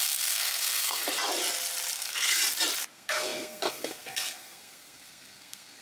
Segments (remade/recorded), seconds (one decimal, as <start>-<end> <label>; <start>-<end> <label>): 0.0-1.0 remade; 1.0-1.9 recorded; 1.9-2.4 remade; 2.4-2.9 recorded; 2.9-5.8 remade